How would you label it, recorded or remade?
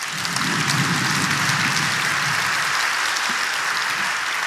recorded